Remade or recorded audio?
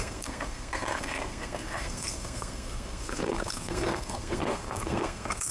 remade